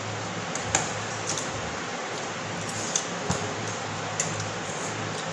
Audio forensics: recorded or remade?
recorded